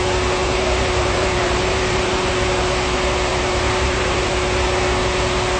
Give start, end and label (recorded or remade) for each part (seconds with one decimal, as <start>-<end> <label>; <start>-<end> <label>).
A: 0.0-0.4 recorded; 0.4-2.3 remade; 2.3-3.3 recorded; 3.3-4.2 remade; 4.2-5.6 recorded